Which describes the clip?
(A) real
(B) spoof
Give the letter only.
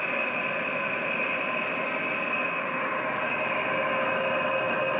A